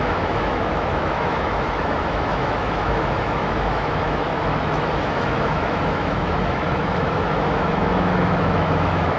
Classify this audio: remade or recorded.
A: remade